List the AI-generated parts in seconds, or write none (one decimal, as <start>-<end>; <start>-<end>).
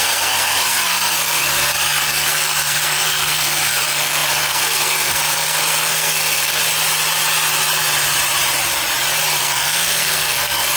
0.0-6.6; 9.4-10.8